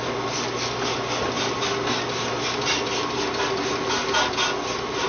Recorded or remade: recorded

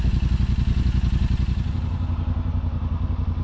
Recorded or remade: recorded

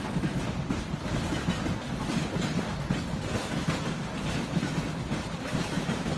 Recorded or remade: recorded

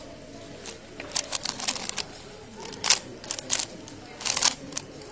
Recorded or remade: recorded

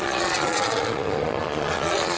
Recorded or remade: remade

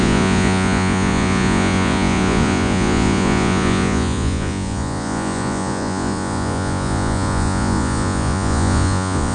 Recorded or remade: remade